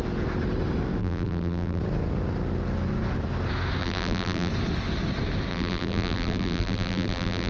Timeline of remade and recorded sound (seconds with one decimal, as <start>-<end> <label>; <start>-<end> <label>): 0.0-1.0 recorded; 1.0-1.8 remade; 1.8-3.8 recorded; 3.8-4.5 remade; 4.5-5.5 recorded; 5.5-7.5 remade